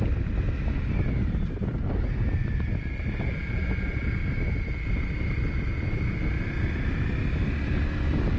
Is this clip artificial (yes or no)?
no